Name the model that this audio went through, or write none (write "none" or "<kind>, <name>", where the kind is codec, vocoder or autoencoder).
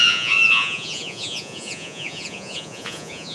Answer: vocoder, Vocos